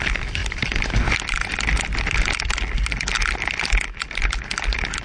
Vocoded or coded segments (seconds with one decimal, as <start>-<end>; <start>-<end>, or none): none